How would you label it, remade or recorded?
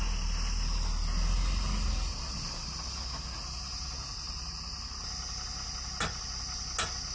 recorded